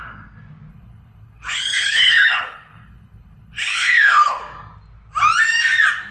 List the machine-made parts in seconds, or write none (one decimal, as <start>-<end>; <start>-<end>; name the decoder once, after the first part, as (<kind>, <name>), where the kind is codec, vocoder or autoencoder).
0.7-4.4 (codec, HILCodec)